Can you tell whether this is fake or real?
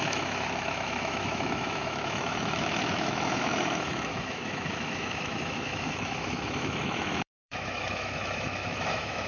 fake